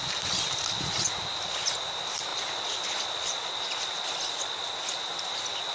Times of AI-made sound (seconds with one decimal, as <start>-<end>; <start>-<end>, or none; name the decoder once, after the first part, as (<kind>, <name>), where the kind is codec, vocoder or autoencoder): none